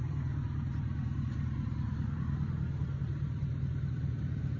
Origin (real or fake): fake